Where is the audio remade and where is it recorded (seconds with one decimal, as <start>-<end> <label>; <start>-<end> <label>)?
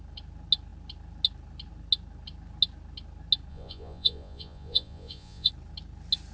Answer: 0.0-3.5 recorded; 3.5-5.5 remade; 5.5-6.3 recorded